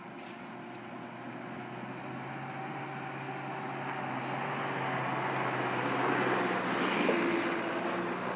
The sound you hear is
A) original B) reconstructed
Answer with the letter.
A